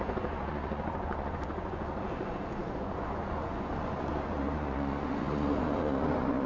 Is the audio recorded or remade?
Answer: remade